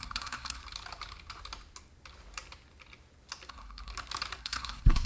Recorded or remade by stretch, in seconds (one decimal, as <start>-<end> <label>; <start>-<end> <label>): 0.0-0.6 remade; 0.6-3.5 recorded; 3.5-3.9 remade; 3.9-4.4 recorded; 4.4-5.1 remade